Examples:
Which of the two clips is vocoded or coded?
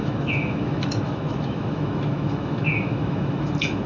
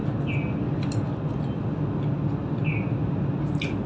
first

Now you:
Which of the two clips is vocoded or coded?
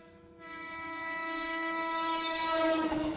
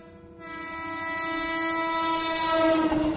first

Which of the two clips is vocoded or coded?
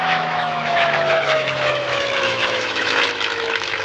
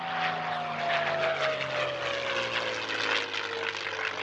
first